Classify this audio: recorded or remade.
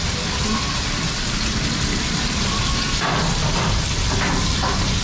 remade